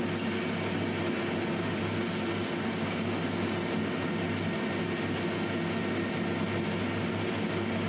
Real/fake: real